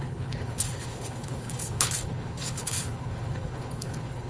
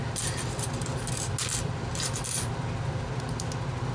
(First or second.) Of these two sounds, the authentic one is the second